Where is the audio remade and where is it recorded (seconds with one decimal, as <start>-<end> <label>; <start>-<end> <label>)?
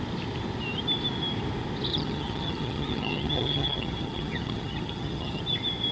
0.0-1.9 recorded; 1.9-5.4 remade; 5.4-5.9 recorded